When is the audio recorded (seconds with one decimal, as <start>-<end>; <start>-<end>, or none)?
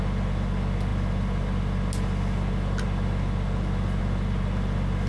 0.0-5.1